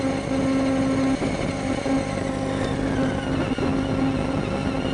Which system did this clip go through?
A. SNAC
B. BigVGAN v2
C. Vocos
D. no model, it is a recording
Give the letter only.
D